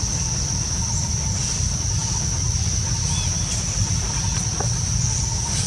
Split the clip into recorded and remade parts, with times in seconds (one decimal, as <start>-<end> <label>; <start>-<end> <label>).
0.0-5.7 recorded